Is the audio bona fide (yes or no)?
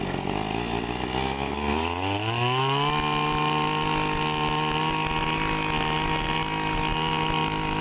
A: yes